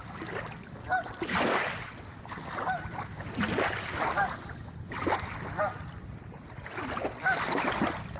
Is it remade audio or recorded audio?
recorded